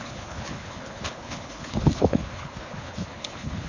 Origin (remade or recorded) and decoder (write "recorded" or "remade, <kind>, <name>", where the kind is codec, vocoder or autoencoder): remade, codec, HILCodec